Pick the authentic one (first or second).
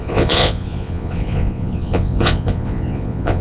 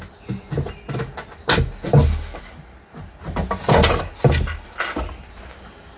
second